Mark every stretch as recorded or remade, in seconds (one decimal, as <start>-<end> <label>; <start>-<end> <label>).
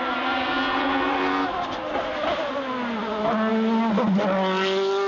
0.0-5.1 recorded